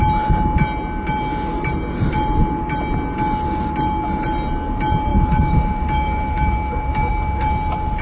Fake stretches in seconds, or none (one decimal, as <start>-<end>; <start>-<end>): 5.1-7.1

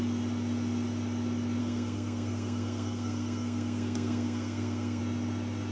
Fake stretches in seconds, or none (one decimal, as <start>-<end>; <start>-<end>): 1.6-5.0

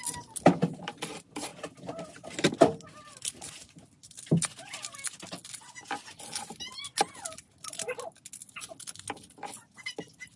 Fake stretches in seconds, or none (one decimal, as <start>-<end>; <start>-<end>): none

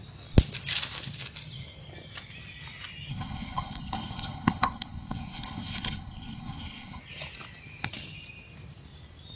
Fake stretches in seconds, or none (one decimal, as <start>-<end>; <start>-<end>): 3.1-7.0

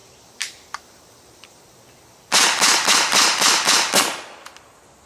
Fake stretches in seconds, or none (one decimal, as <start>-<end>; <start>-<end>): 0.0-1.6; 3.1-3.7